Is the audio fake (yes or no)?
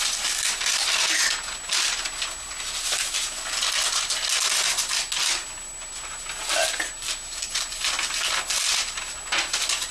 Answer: no